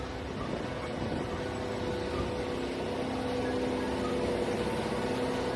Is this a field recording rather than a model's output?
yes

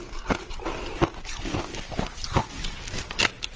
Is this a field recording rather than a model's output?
yes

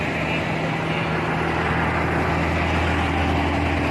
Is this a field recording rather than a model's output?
yes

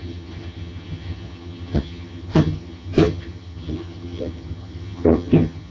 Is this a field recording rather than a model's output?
no